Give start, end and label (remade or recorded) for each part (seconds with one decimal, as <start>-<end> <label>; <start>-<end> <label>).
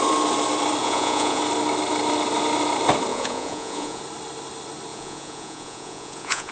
0.0-0.8 recorded; 0.8-1.4 remade; 1.4-3.1 recorded; 3.1-4.0 remade; 4.0-4.9 recorded; 4.9-6.5 remade